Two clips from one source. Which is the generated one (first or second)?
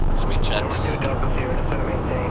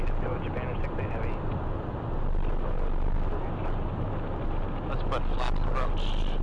first